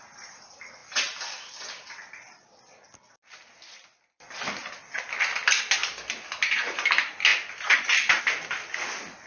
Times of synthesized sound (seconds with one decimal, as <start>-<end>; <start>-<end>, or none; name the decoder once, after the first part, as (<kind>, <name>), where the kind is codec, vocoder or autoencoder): none